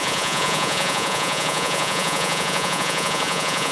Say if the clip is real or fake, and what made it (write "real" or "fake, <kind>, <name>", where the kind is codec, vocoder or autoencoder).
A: fake, vocoder, Vocos